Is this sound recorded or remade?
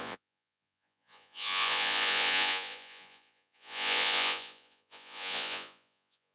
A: remade